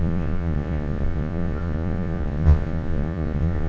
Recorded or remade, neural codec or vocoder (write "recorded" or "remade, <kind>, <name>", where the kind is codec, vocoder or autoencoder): remade, vocoder, Vocos